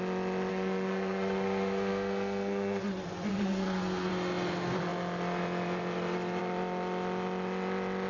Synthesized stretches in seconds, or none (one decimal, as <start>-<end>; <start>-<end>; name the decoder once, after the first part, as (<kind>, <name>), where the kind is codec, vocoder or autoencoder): 0.5-2.8 (codec, SNAC); 3.3-4.1